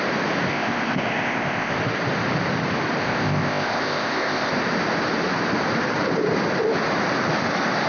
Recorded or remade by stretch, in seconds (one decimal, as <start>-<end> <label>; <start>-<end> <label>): 0.0-0.5 recorded; 0.5-1.7 remade; 1.7-3.0 recorded; 3.0-4.5 remade; 4.5-7.9 recorded